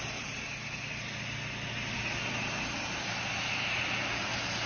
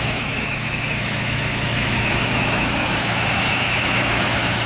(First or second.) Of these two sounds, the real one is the first